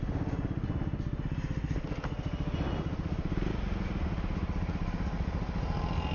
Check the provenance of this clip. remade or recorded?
recorded